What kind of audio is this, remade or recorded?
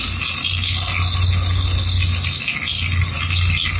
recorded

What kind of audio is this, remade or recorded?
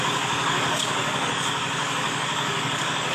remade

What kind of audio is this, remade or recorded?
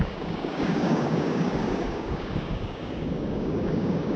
remade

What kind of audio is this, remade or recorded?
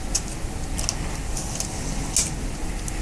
recorded